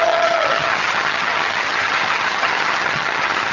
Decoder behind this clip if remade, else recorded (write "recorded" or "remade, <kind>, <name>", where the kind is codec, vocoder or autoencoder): remade, vocoder, HiFi-GAN